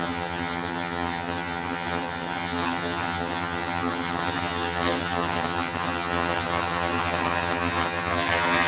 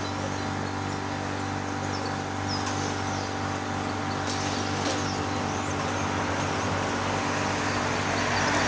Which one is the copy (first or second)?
first